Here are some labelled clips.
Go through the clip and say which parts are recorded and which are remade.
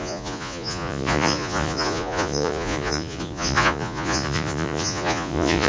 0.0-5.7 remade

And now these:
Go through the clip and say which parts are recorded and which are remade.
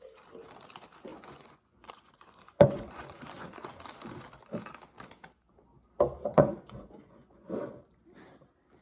0.0-1.1 recorded; 1.1-3.7 remade; 3.7-6.3 recorded; 6.3-7.5 remade; 7.5-8.8 recorded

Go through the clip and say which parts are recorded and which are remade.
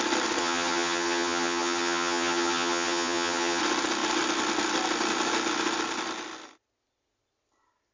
0.0-0.4 recorded; 0.4-3.6 remade; 3.6-7.9 recorded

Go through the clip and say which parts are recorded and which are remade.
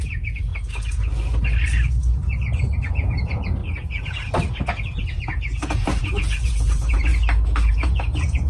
0.0-0.5 remade; 0.5-2.9 recorded; 2.9-3.6 remade; 3.6-4.6 recorded; 4.6-7.1 remade; 7.1-7.7 recorded; 7.7-8.5 remade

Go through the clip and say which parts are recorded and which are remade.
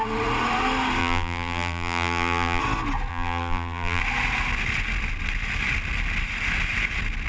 0.0-1.0 recorded; 1.0-2.6 remade; 2.6-3.1 recorded; 3.1-4.0 remade; 4.0-7.3 recorded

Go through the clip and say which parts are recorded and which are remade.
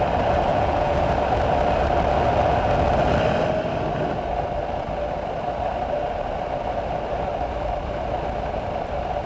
0.0-0.5 recorded; 0.5-1.1 remade; 1.1-9.3 recorded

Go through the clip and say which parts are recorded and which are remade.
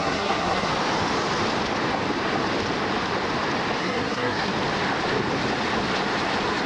0.0-0.7 remade; 0.7-3.8 recorded; 3.8-4.5 remade; 4.5-6.7 recorded